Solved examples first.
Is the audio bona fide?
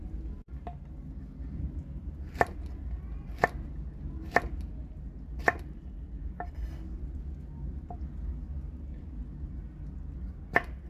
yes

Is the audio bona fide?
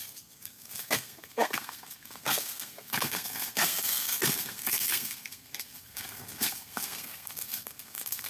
no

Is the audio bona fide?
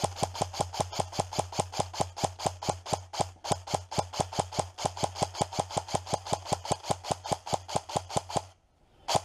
yes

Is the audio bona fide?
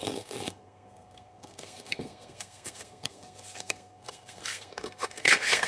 no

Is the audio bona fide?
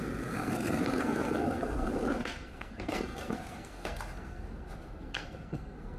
no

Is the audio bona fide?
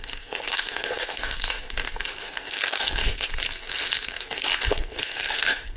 no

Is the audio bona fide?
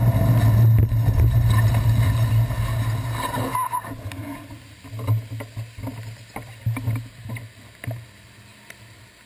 yes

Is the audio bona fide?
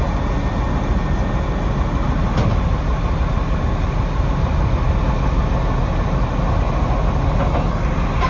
yes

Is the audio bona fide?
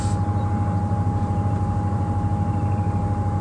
yes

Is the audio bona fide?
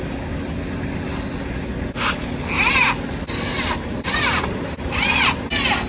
yes